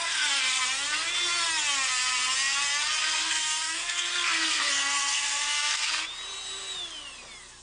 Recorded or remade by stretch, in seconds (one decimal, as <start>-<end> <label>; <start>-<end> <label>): 0.0-0.6 remade; 0.6-3.0 recorded; 3.0-5.9 remade; 5.9-7.6 recorded